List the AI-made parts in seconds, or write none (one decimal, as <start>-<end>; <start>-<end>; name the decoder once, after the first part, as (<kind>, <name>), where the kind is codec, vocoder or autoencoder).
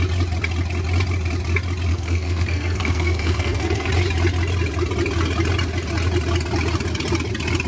1.9-3.9 (codec, SNAC)